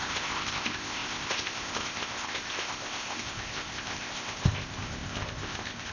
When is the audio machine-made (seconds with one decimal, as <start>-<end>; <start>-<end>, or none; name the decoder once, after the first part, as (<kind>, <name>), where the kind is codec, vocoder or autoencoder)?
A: 0.0-5.9 (codec, ZipCodec)